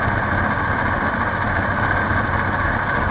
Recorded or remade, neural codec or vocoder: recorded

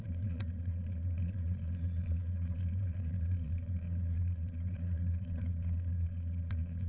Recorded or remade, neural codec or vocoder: remade, vocoder, Vocos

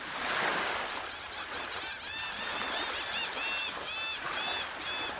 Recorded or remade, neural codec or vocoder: recorded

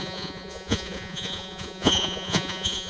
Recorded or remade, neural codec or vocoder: remade, vocoder, Vocos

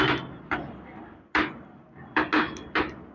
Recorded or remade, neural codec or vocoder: recorded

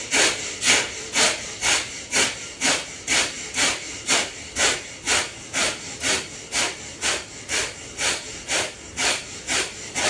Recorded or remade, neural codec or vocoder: recorded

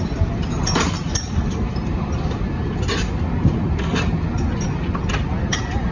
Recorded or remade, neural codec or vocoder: recorded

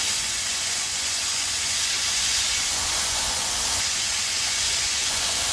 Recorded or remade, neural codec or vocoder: remade, vocoder, Vocos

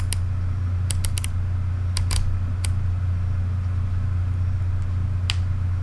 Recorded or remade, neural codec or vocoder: recorded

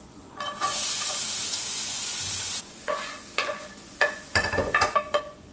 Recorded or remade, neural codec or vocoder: remade, vocoder, Vocos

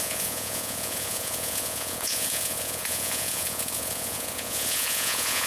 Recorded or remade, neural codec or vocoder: remade, vocoder, Vocos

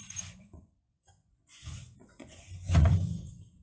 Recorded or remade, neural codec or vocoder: remade, vocoder, Vocos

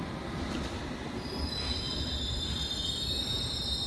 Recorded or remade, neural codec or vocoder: recorded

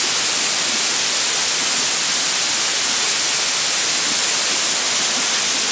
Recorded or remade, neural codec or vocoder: recorded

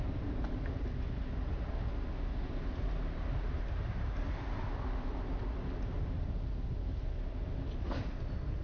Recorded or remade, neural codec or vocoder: recorded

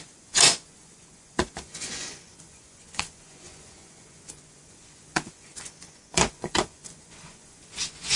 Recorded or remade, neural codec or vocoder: remade, vocoder, Vocos